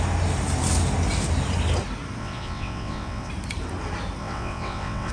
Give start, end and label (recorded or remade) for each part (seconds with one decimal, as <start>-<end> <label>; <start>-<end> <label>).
0.0-2.2 recorded; 2.2-3.3 remade; 3.3-4.2 recorded; 4.2-5.1 remade